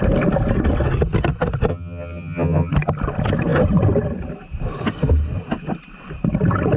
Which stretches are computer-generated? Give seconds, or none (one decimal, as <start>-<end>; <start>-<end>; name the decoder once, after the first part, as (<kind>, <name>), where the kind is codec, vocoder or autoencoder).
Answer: 1.7-2.7 (vocoder, HiFi-GAN)